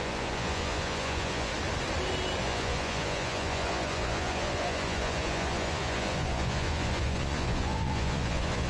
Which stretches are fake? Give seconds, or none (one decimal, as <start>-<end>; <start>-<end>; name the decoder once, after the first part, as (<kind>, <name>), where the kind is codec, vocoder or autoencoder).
0.0-1.5 (vocoder, Vocos); 2.4-8.7